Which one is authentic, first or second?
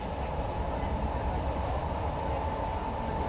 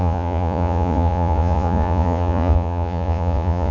first